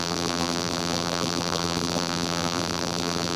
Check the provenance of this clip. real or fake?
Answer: fake